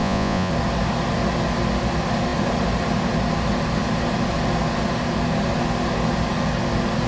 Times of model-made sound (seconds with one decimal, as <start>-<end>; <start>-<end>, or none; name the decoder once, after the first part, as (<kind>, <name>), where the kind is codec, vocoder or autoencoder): 0.0-0.5 (vocoder, Vocos)